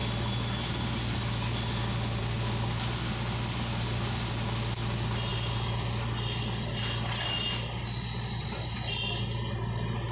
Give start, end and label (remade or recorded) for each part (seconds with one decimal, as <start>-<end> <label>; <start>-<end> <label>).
0.0-10.1 recorded